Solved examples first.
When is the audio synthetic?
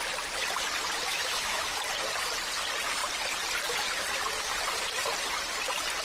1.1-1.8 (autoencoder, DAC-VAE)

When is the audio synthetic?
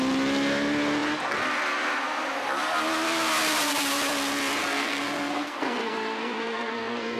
4.6-7.2 (codec, SNAC)